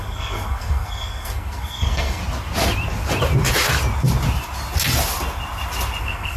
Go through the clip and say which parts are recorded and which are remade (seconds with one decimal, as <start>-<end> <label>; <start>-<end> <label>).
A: 0.0-2.2 remade; 2.2-6.0 recorded; 6.0-6.4 remade